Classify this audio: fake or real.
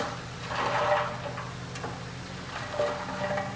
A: real